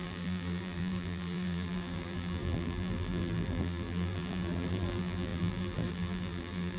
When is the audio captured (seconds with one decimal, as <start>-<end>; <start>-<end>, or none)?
none